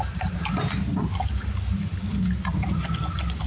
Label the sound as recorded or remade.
recorded